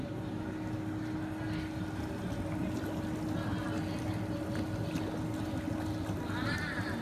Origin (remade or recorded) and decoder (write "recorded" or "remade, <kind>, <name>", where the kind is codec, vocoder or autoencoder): recorded